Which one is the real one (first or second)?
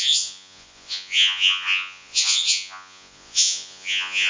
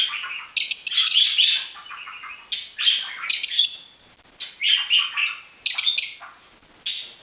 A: second